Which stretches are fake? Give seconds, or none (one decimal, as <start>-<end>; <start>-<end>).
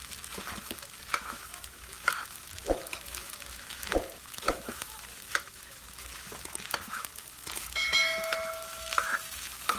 0.0-9.8